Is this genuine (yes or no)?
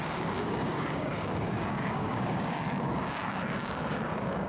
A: no